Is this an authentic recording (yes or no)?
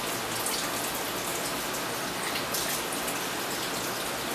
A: yes